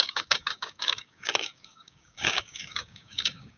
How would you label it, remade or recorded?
remade